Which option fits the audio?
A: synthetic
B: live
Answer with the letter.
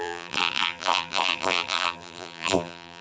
A